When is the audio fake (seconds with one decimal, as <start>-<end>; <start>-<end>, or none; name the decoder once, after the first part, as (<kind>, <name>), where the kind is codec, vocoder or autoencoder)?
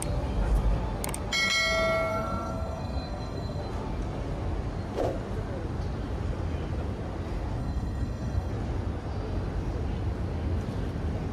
2.1-3.6 (codec, SNAC); 7.6-8.5